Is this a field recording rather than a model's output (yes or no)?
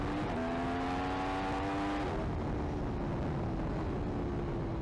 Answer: yes